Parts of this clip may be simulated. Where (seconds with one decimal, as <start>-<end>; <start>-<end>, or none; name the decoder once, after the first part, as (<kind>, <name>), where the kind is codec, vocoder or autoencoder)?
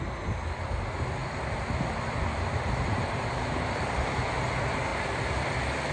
1.2-4.5 (vocoder, BigVGAN v2); 4.9-5.9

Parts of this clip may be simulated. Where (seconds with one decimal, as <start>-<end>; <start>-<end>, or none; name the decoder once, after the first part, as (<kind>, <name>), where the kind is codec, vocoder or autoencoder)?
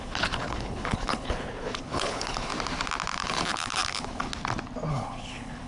0.0-2.5 (codec, HILCodec); 3.1-4.3; 4.9-5.7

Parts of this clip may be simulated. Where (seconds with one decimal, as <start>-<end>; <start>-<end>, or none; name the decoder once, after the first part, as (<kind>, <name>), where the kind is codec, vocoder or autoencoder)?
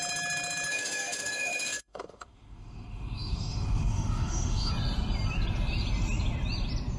0.7-4.7 (autoencoder, DAC-VAE)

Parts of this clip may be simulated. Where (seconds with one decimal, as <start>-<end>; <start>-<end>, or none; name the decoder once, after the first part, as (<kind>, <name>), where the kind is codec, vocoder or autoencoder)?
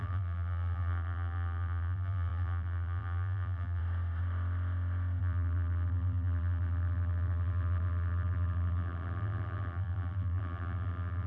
0.0-3.8 (vocoder, BigVGAN v2); 5.2-11.3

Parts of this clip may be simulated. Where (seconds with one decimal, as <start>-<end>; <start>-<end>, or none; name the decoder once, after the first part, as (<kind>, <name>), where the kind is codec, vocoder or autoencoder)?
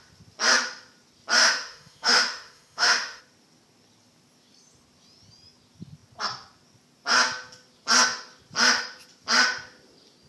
1.4-3.2 (autoencoder, DAC-VAE)